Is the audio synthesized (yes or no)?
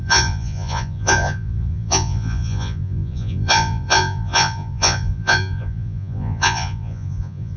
yes